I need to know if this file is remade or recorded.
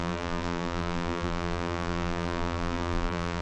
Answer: remade